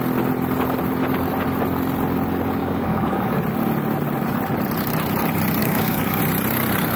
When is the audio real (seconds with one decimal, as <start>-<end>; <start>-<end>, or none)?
0.0-2.6; 3.4-5.6; 6.2-7.0